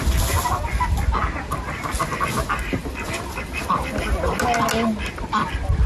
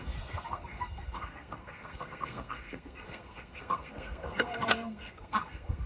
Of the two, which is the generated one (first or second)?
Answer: second